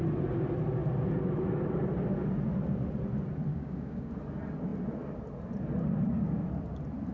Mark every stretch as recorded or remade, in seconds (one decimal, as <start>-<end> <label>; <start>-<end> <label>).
0.0-3.5 recorded; 3.5-4.1 remade; 4.1-7.1 recorded